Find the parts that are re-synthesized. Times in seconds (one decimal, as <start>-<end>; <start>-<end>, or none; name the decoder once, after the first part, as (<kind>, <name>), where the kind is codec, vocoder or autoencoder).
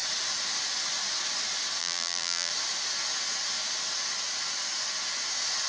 1.8-2.5 (vocoder, BigVGAN v2)